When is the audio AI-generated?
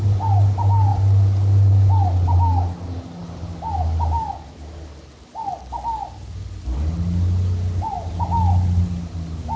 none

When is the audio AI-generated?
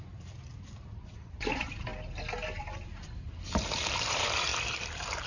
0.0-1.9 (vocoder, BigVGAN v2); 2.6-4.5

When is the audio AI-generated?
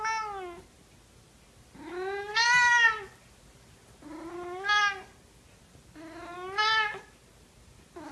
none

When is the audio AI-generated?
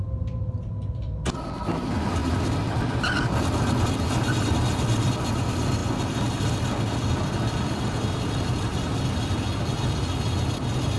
none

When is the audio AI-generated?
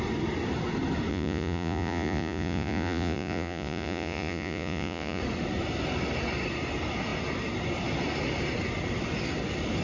1.1-5.2 (vocoder, Vocos)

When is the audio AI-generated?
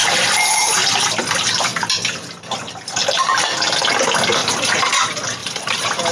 0.0-1.0 (vocoder, BigVGAN v2); 4.4-4.9; 5.4-6.1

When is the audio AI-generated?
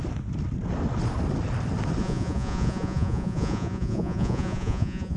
2.0-5.2 (vocoder, Vocos)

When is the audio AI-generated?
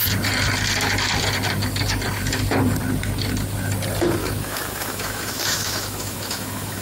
4.2-6.8 (autoencoder, DAC-VAE)